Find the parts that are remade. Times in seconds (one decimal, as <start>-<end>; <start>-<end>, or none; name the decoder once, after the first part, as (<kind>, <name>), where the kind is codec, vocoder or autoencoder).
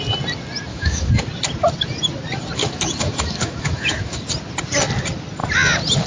0.7-1.2 (autoencoder, DAC-VAE); 2.6-4.2